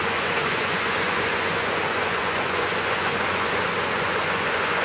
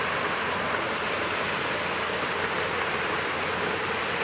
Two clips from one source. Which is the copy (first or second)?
first